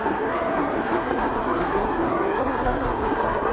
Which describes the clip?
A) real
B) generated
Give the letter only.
B